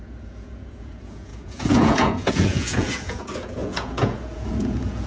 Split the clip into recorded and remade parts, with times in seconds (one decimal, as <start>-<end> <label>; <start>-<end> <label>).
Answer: 0.0-5.1 remade